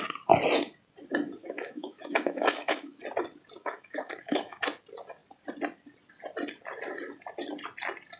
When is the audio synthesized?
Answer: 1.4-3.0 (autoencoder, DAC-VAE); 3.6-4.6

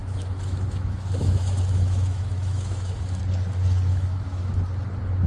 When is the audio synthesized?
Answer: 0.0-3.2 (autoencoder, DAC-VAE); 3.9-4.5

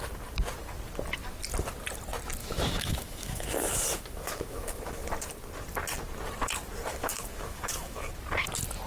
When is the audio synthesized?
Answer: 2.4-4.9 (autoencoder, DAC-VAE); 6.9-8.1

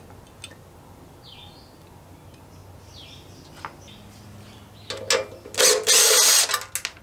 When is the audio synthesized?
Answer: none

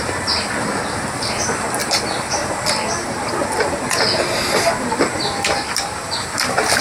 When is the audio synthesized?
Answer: none

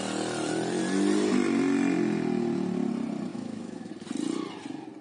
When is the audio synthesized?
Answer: 3.3-3.9 (autoencoder, DAC-VAE)

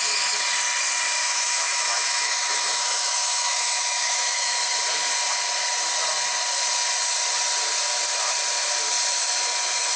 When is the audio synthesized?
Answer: 1.2-4.5 (autoencoder, DAC-VAE)

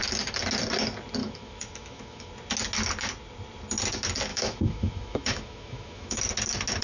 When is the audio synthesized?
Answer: 1.2-2.3 (autoencoder, DAC-VAE); 4.3-6.2